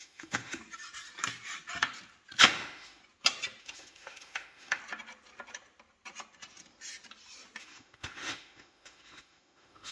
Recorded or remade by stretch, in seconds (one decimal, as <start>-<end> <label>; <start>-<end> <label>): 0.0-0.6 remade; 0.6-2.4 recorded; 2.4-3.0 remade; 3.0-3.6 recorded; 3.6-4.8 remade; 4.8-7.6 recorded; 7.6-9.9 remade